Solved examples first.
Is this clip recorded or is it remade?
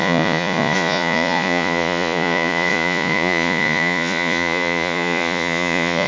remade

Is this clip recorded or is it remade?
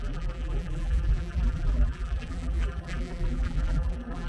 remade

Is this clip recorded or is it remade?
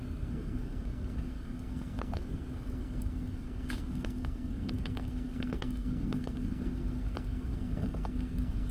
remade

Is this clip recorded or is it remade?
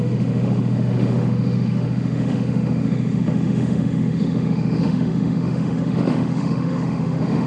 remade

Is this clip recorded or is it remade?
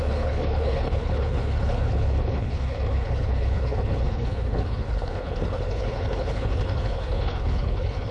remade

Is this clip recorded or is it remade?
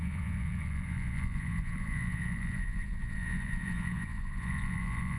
remade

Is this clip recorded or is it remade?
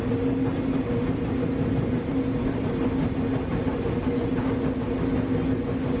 recorded